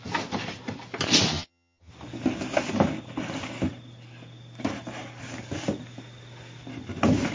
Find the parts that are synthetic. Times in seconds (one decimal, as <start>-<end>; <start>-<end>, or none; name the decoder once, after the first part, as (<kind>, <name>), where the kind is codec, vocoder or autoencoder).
1.3-1.9 (vocoder, HiFi-GAN)